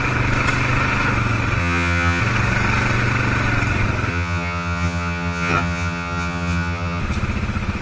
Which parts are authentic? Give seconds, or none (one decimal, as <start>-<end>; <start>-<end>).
0.0-1.6; 2.2-4.1; 7.0-7.8